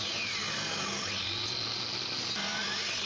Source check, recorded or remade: recorded